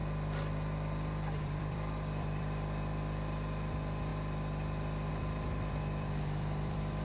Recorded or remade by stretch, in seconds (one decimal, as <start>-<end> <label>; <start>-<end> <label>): 0.0-1.4 recorded; 1.4-4.1 remade; 4.1-5.1 recorded; 5.1-7.0 remade